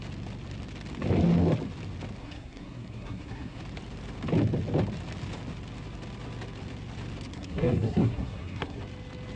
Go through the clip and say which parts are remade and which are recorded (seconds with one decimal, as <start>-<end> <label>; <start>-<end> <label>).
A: 0.0-2.2 recorded; 2.2-3.6 remade; 3.6-7.3 recorded; 7.3-8.8 remade; 8.8-9.4 recorded